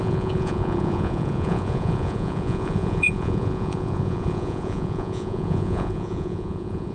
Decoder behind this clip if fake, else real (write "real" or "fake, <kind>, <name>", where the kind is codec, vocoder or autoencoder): fake, vocoder, Vocos